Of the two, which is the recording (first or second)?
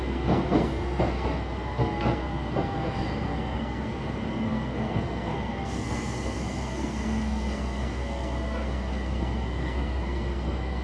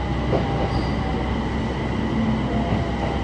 second